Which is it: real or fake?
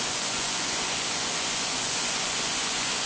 fake